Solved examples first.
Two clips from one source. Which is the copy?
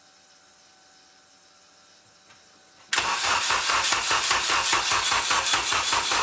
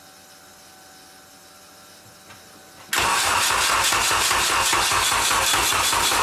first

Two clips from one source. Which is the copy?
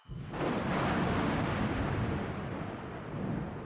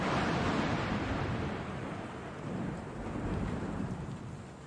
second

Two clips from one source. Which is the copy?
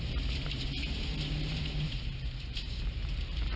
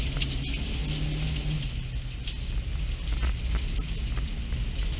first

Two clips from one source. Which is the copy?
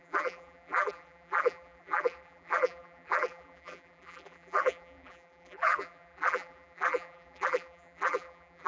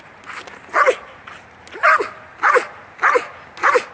first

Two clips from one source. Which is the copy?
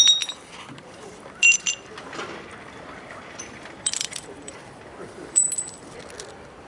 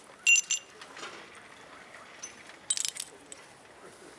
first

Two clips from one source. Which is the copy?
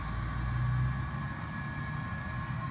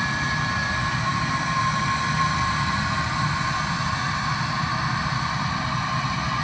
second